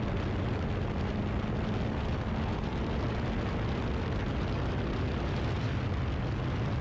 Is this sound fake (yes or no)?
no